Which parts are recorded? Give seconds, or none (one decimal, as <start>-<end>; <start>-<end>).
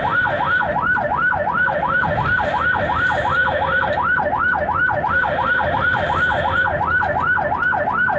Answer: 0.0-8.2